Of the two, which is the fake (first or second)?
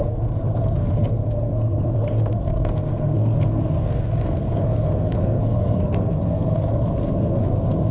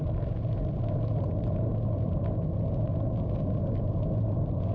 first